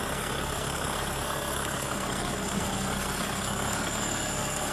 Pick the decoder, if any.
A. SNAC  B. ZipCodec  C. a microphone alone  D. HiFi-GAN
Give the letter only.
A